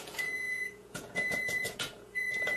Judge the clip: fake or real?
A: fake